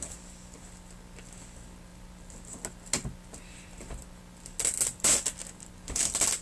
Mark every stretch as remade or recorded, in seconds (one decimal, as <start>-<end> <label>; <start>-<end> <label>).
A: 0.0-6.4 recorded